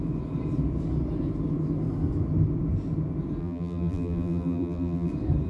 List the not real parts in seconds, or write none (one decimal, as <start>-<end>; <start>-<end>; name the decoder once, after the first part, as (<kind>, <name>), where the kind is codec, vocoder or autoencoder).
3.4-5.1 (vocoder, BigVGAN v2)